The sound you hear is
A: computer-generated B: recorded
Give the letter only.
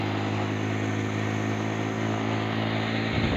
B